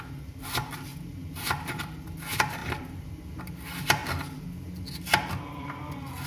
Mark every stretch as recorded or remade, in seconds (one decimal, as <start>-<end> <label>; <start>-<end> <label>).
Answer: 0.0-0.9 recorded; 0.9-2.0 remade; 2.0-2.6 recorded; 2.6-3.5 remade; 3.5-6.3 recorded